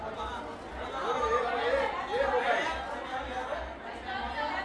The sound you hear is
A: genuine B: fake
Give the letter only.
A